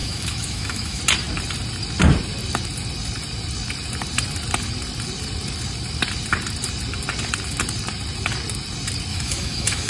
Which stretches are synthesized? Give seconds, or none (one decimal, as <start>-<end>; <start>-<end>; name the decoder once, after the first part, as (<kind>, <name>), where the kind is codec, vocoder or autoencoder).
0.0-1.0 (autoencoder, DAC-VAE); 9.1-9.9